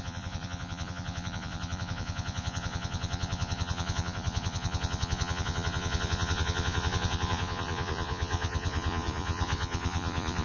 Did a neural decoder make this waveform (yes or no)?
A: yes